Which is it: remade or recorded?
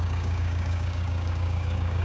remade